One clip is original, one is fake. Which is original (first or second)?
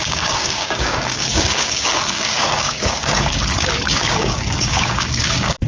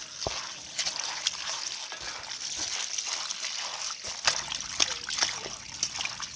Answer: second